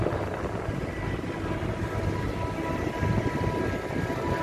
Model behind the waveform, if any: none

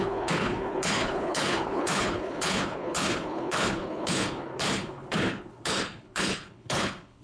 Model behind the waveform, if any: codec, HILCodec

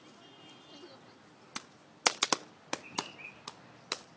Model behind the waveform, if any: none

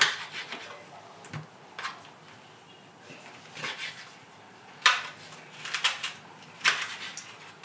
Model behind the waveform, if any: none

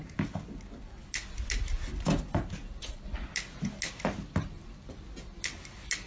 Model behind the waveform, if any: none